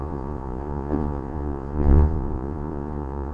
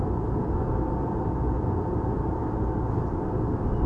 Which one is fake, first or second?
first